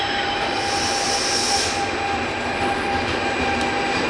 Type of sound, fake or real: real